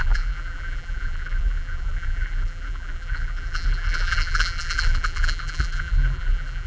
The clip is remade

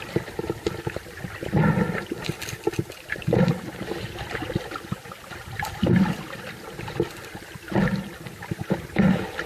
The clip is recorded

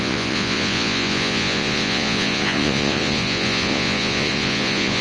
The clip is remade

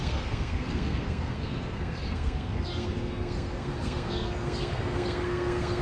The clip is remade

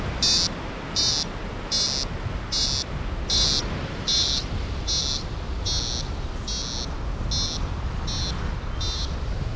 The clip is recorded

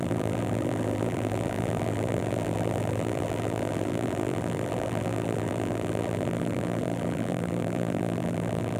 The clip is remade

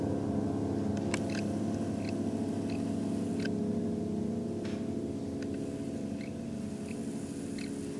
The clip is recorded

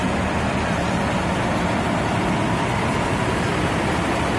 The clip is recorded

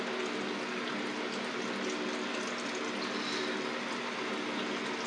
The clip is recorded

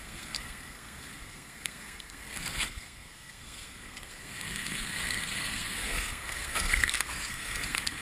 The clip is remade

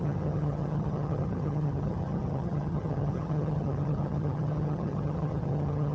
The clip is remade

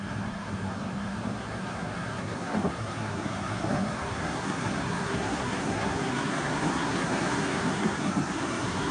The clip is remade